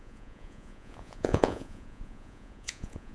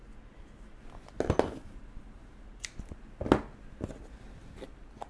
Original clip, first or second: second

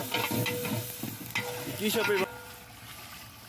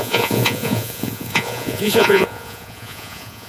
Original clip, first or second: first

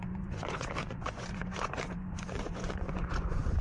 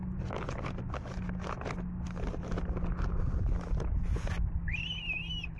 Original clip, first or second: second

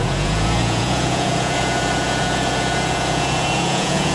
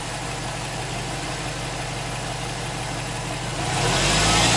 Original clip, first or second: second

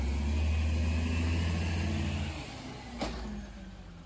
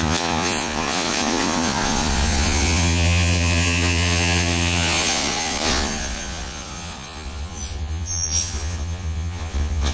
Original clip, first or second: first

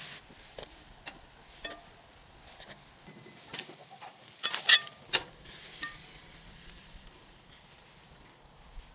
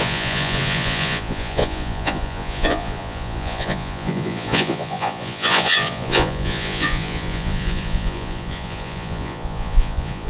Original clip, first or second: first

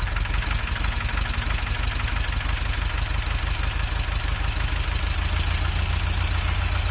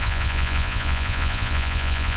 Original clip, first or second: first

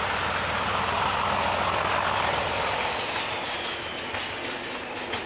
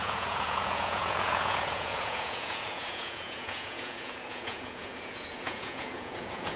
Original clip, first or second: first